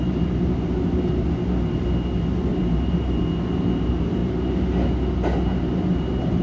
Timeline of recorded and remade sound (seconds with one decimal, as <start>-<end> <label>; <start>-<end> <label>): 0.0-2.5 recorded; 2.5-3.2 remade; 3.2-6.4 recorded